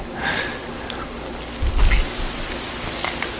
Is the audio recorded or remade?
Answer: recorded